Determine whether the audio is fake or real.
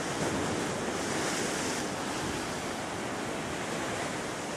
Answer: real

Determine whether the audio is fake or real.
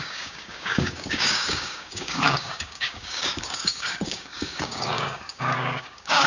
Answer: fake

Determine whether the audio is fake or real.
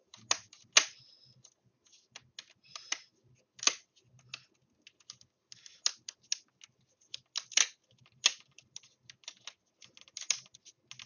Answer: real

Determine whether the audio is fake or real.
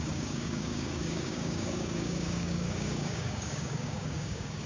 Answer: fake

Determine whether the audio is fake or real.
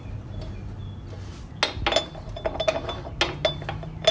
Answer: real